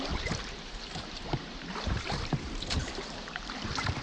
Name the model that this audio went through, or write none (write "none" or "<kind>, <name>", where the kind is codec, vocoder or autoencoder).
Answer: vocoder, BigVGAN v2